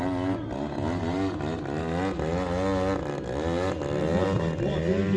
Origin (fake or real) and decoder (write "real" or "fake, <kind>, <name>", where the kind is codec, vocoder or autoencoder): real